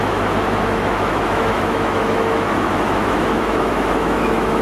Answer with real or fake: fake